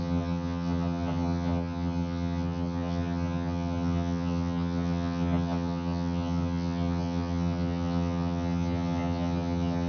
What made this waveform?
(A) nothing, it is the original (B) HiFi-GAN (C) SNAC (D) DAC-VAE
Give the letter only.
B